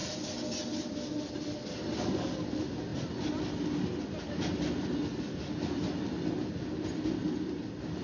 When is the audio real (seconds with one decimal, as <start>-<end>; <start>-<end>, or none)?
0.0-8.0